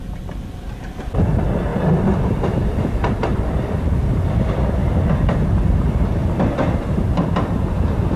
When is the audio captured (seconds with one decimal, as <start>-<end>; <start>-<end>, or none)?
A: 0.0-1.7; 3.9-8.2